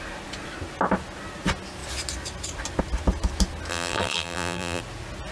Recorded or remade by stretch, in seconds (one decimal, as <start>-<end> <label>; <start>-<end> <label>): 0.0-3.7 recorded; 3.7-4.8 remade; 4.8-5.3 recorded